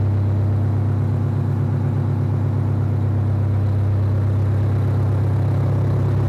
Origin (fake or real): real